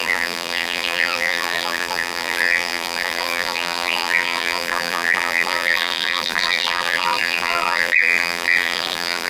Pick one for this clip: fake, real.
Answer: fake